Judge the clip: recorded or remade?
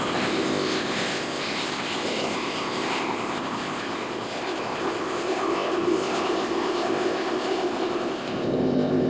remade